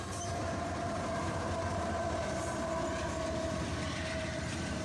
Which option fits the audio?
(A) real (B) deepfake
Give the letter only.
B